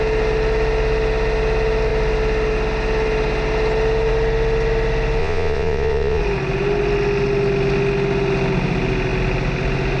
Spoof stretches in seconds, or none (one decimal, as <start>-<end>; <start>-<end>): 5.2-6.2